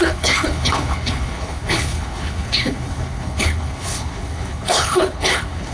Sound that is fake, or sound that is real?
fake